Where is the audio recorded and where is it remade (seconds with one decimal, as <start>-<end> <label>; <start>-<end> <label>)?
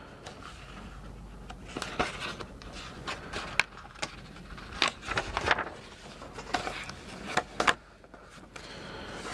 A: 0.0-2.5 recorded; 2.5-3.3 remade; 3.3-9.3 recorded